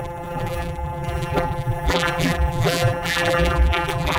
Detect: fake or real fake